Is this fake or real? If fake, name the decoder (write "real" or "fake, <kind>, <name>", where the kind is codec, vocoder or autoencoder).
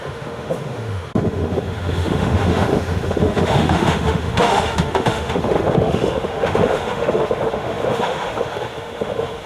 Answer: fake, autoencoder, DAC-VAE